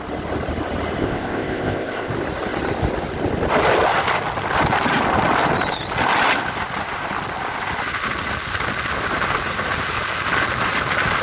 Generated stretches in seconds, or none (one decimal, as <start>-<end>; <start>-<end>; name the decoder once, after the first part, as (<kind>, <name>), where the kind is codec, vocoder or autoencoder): 1.0-2.1 (codec, ZipCodec)